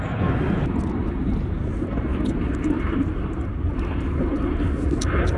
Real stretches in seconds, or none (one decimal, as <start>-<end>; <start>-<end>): 0.0-1.0; 4.2-5.4